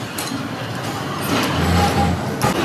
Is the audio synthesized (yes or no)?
no